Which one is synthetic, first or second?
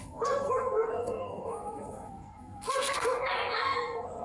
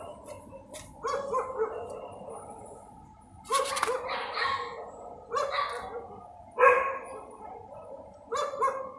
first